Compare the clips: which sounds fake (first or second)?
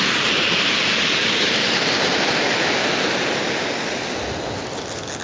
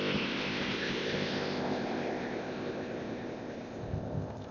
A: second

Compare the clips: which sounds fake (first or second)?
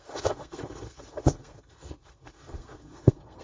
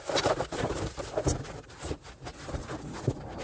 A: first